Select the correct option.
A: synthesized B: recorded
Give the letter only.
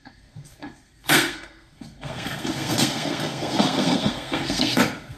A